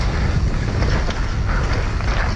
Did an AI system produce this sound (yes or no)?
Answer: no